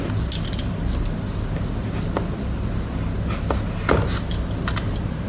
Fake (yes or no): no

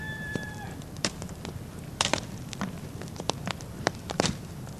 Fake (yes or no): yes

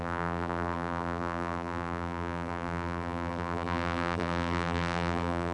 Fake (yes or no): yes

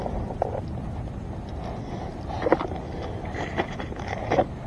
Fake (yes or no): no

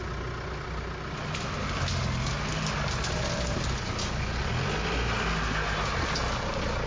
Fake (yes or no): no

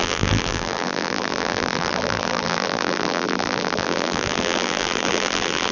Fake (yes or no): yes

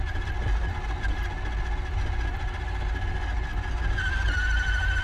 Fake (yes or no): no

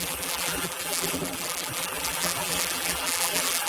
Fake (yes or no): yes